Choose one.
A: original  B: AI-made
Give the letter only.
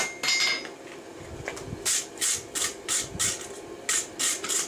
A